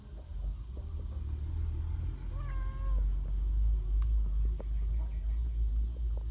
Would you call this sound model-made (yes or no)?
no